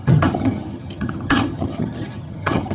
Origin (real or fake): fake